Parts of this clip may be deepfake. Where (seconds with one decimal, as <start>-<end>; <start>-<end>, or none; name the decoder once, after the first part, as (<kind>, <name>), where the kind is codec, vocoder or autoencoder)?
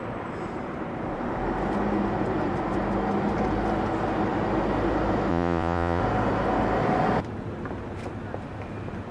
5.3-6.0 (vocoder, Vocos)